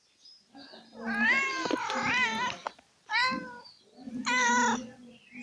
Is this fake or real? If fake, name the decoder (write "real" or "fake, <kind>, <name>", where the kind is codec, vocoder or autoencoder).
real